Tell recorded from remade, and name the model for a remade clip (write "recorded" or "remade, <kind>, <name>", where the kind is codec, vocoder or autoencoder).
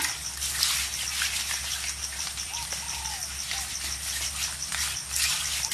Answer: recorded